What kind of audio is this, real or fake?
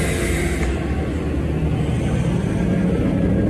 real